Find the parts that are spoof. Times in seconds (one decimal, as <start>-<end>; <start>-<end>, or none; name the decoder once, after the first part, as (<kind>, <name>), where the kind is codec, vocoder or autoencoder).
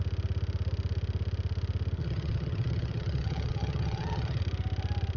2.0-4.4 (vocoder, HiFi-GAN)